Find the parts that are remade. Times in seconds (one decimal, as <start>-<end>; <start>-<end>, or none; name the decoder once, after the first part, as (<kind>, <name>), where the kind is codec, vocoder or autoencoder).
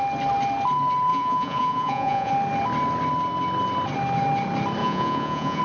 1.1-2.3 (vocoder, Vocos); 4.8-5.6